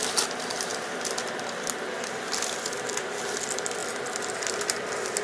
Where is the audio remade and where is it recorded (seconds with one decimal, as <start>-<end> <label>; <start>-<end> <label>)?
0.0-5.2 recorded